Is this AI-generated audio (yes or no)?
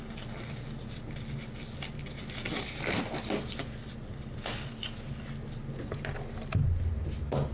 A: no